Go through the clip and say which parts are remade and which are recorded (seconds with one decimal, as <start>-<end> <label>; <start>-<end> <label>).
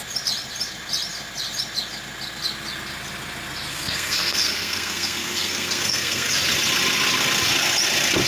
0.0-3.7 recorded; 3.7-6.3 remade; 6.3-8.3 recorded